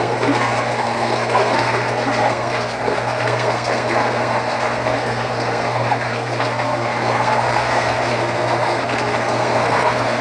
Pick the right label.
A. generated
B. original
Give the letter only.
A